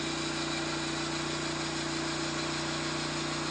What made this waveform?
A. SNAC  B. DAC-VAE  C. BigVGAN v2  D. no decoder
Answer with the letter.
D